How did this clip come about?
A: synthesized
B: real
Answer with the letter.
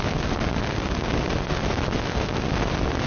B